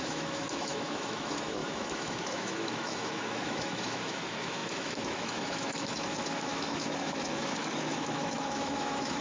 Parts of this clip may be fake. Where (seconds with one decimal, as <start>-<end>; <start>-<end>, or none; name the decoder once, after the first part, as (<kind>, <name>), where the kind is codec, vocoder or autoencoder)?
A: 0.0-9.2 (autoencoder, DAC-VAE)